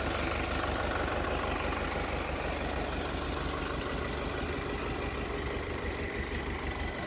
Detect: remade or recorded recorded